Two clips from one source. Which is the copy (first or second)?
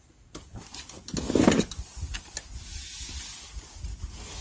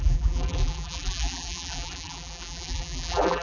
second